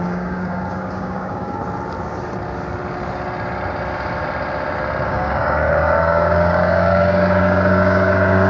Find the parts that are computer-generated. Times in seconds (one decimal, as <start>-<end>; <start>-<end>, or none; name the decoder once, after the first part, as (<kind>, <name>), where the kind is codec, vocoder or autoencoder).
0.0-1.6 (codec, DAC); 5.1-8.5